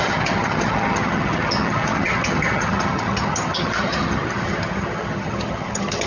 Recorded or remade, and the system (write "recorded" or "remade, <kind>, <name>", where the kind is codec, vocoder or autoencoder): remade, vocoder, HiFi-GAN